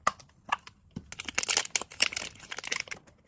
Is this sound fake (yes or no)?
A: no